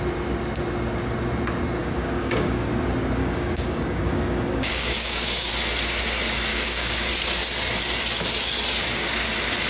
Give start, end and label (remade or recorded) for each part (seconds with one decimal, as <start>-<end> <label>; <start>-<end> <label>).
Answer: 0.0-1.8 recorded; 1.8-2.7 remade; 2.7-3.2 recorded; 3.2-5.5 remade; 5.5-6.5 recorded; 6.5-7.1 remade; 7.1-9.7 recorded